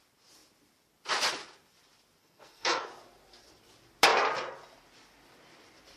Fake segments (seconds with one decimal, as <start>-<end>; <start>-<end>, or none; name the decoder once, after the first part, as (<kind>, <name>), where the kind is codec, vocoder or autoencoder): 2.2-2.9 (codec, SNAC)